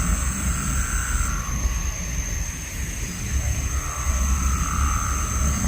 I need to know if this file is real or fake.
real